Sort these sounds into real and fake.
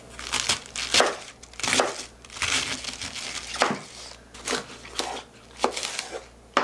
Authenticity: real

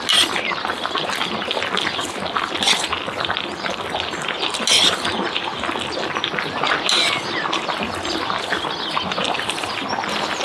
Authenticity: real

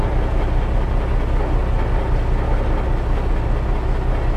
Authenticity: real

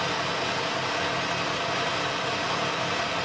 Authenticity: real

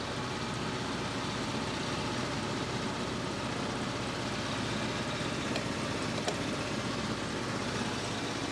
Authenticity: real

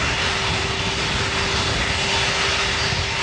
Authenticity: real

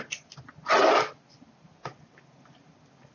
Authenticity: real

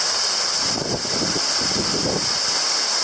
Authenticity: real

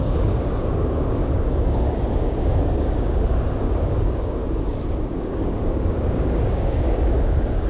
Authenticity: fake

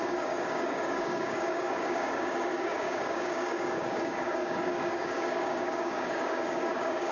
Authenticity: fake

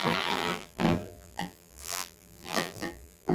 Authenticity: fake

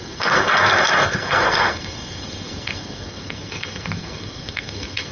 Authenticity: fake